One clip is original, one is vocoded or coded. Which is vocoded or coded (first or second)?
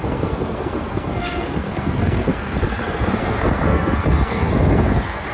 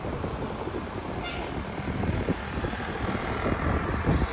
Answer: first